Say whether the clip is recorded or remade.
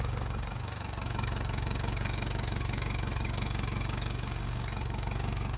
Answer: remade